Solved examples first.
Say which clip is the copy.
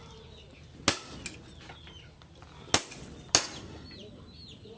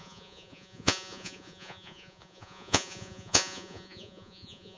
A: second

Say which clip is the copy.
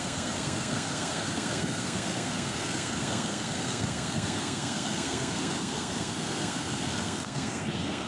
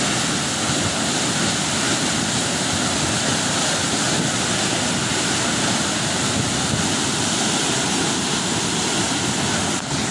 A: first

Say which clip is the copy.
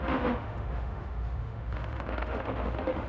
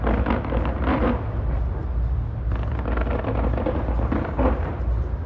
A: first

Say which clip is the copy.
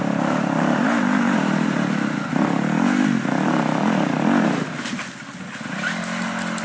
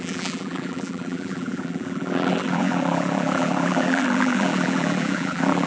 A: second